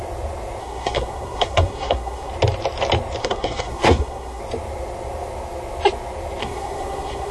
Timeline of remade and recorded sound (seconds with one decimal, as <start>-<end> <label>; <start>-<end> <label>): 0.0-0.6 recorded; 0.6-2.3 remade; 2.3-3.2 recorded; 3.2-4.4 remade; 4.4-6.4 recorded; 6.4-7.3 remade